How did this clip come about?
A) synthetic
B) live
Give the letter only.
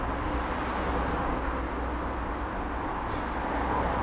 B